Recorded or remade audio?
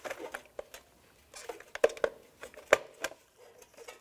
recorded